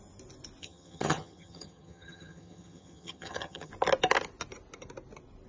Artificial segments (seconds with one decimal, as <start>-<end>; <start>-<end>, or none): 0.6-3.7